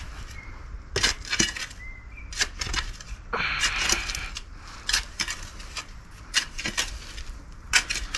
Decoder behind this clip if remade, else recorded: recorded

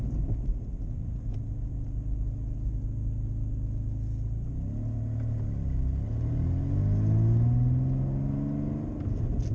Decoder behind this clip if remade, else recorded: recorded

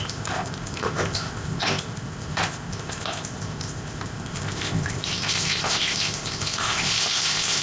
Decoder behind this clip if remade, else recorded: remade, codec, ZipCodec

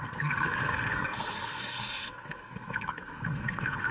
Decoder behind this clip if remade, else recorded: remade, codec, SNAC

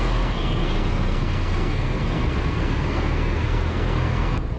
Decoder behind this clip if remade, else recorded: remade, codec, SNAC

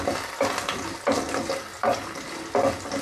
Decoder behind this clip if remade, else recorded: recorded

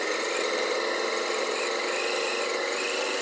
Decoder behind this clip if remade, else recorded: recorded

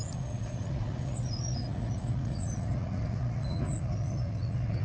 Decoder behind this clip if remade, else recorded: remade, vocoder, Vocos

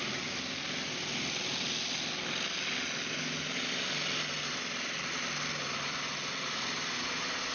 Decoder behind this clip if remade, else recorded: recorded